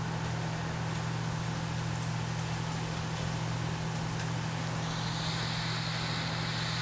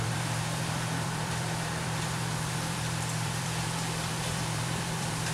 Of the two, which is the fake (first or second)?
second